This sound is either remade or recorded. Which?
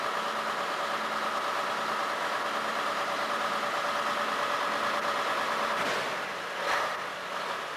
recorded